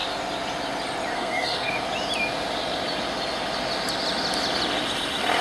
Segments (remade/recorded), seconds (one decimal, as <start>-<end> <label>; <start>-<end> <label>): 0.0-1.1 recorded; 1.1-1.7 remade; 1.7-5.4 recorded